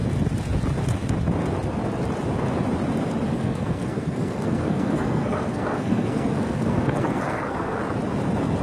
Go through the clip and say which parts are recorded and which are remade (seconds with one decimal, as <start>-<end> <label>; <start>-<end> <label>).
0.0-3.3 recorded; 3.3-7.8 remade; 7.8-8.6 recorded

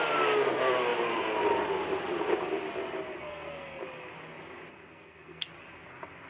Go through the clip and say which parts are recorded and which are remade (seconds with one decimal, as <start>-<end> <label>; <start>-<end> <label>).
0.0-3.1 recorded; 3.1-3.8 remade; 3.8-4.7 recorded; 4.7-5.5 remade; 5.5-6.3 recorded

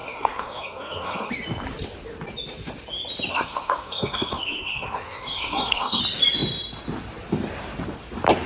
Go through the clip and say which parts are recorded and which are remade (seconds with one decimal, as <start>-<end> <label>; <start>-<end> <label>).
0.0-1.3 remade; 1.3-3.3 recorded; 3.3-6.0 remade; 6.0-8.5 recorded

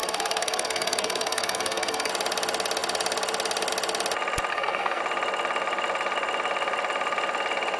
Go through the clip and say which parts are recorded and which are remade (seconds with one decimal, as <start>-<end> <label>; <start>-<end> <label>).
0.0-2.1 remade; 2.1-4.5 recorded; 4.5-5.0 remade; 5.0-7.8 recorded

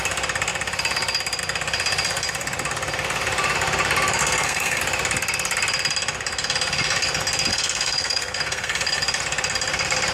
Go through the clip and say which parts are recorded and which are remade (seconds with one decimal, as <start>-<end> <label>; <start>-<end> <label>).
0.0-4.2 recorded; 4.2-4.8 remade; 4.8-7.5 recorded; 7.5-9.0 remade; 9.0-10.1 recorded

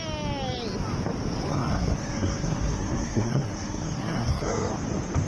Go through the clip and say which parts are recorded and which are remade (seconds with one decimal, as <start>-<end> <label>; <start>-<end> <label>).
0.0-1.5 recorded; 1.5-4.7 remade; 4.7-5.3 recorded